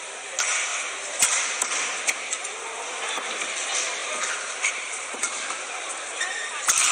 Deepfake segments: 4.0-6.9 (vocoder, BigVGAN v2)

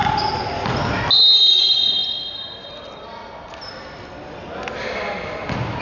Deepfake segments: 0.0-0.8 (vocoder, BigVGAN v2)

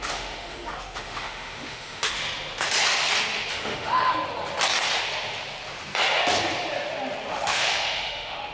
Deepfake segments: 0.0-2.2 (autoencoder, DAC-VAE); 3.5-4.1; 7.3-8.5

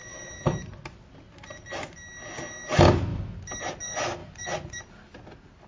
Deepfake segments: 0.0-0.7 (vocoder, BigVGAN v2); 4.2-4.8